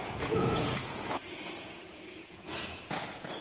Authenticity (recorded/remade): remade